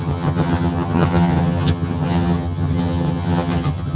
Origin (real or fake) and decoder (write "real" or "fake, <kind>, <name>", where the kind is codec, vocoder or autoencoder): fake, vocoder, HiFi-GAN